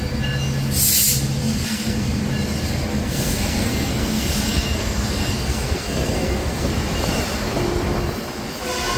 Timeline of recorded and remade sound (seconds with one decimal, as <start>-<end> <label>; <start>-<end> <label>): 0.0-1.4 recorded; 1.4-2.2 remade; 2.2-2.9 recorded; 2.9-6.7 remade; 6.7-9.0 recorded